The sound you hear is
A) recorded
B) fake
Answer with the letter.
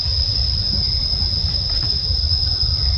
A